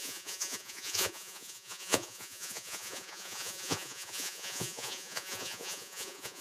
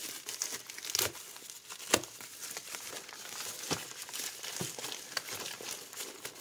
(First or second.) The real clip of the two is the second